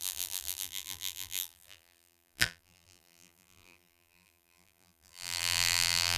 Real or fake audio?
fake